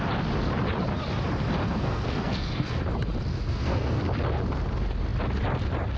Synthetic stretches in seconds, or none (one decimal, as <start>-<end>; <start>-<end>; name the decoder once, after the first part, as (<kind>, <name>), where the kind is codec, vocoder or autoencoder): 1.6-2.8 (codec, SNAC); 3.3-4.0